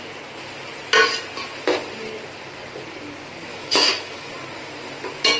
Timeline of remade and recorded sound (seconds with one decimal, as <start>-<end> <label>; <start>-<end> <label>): 0.0-3.5 recorded; 3.5-4.3 remade; 4.3-5.4 recorded